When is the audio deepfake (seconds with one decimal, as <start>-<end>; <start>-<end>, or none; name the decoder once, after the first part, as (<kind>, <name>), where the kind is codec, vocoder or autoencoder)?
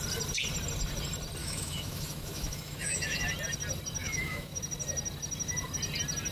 1.4-3.3 (autoencoder, DAC-VAE); 4.0-4.6